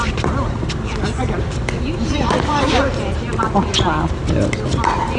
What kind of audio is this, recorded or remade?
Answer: recorded